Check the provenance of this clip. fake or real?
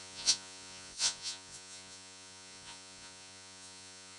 fake